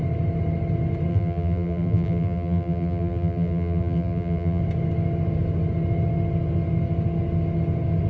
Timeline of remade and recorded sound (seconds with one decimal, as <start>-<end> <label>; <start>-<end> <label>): 0.0-1.1 recorded; 1.1-4.6 remade; 4.6-8.1 recorded

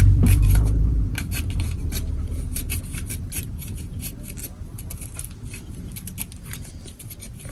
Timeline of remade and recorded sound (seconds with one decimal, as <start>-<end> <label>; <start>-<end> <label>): 0.0-2.6 remade; 2.6-3.3 recorded; 3.3-4.5 remade; 4.5-6.4 recorded; 6.4-7.5 remade

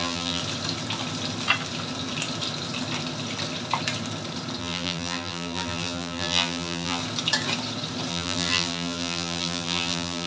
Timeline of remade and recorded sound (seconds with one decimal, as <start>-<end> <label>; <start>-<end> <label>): 0.0-0.4 remade; 0.4-4.6 recorded; 4.6-7.0 remade; 7.0-8.1 recorded; 8.1-10.3 remade

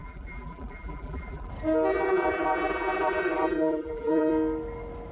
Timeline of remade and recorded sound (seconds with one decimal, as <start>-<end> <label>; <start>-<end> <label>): 0.0-1.5 remade; 1.5-1.9 recorded; 1.9-4.3 remade; 4.3-5.1 recorded

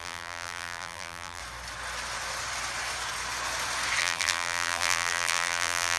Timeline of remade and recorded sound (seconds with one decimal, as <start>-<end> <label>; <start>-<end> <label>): 0.0-1.4 remade; 1.4-4.0 recorded; 4.0-6.0 remade

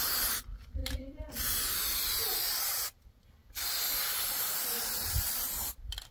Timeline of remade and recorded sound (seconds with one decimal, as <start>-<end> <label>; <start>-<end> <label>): 0.0-0.8 recorded; 0.8-2.6 remade; 2.6-3.4 recorded; 3.4-6.1 remade